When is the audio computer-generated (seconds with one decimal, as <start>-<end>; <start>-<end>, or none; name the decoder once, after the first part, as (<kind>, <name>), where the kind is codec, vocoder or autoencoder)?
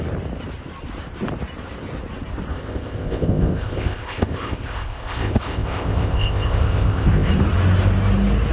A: 2.5-7.3 (codec, ZipCodec)